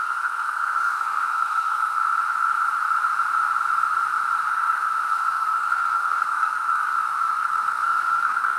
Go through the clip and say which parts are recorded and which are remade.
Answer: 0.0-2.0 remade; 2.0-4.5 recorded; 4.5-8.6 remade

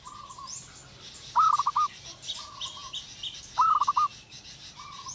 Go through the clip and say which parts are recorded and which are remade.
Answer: 0.0-5.1 recorded